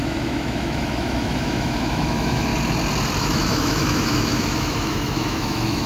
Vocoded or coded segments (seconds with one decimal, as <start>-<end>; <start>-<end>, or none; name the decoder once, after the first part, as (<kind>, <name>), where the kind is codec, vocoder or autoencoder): 0.0-2.5 (autoencoder, DAC-VAE); 3.2-5.9